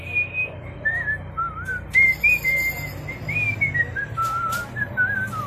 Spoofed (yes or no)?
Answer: no